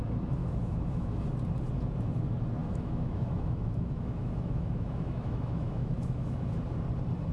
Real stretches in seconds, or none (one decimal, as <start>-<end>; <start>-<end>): 0.0-0.4; 1.2-2.6; 6.6-7.3